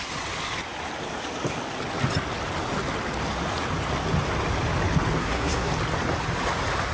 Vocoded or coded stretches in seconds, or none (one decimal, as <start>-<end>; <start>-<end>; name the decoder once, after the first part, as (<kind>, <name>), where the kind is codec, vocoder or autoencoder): 5.2-5.7 (codec, SNAC)

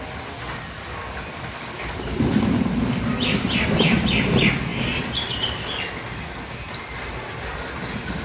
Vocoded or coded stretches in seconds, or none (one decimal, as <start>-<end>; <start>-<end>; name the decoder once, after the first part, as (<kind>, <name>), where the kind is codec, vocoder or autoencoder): none

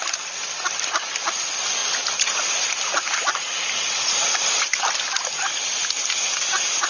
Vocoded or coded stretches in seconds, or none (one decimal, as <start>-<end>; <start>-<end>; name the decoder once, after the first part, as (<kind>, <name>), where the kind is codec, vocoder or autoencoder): 0.0-1.8 (vocoder, BigVGAN v2); 3.8-4.7

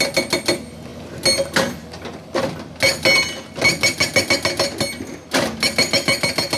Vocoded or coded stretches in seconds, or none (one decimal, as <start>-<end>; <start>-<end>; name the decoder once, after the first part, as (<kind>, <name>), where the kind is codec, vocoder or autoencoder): none

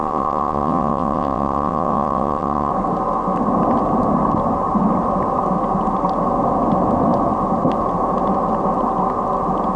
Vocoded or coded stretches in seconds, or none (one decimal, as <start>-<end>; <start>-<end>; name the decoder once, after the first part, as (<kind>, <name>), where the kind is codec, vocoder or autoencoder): 0.0-2.7 (vocoder, WaveNeXt)